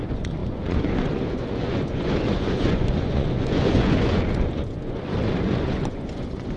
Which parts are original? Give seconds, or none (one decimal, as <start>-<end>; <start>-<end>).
none